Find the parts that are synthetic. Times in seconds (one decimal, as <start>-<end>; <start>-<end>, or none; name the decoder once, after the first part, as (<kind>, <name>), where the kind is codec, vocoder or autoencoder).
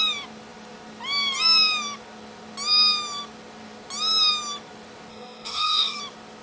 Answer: 5.1-6.0 (codec, DAC)